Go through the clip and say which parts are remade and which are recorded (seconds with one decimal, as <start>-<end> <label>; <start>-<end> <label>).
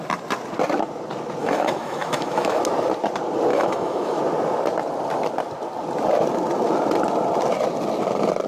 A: 0.0-1.4 recorded; 1.4-2.6 remade; 2.6-3.5 recorded; 3.5-4.2 remade; 4.2-8.5 recorded